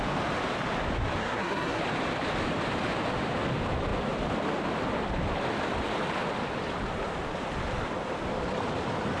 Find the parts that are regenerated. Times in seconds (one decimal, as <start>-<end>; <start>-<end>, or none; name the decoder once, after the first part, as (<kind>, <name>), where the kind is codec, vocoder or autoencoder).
1.2-1.8 (codec, SNAC)